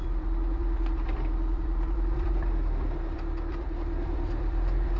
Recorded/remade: remade